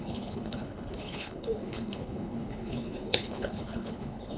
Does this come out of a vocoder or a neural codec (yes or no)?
yes